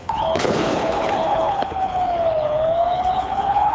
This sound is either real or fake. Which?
fake